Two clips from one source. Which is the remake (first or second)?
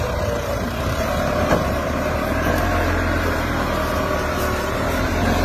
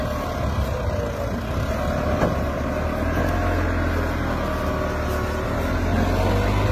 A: first